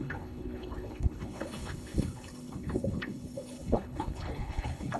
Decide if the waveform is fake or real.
fake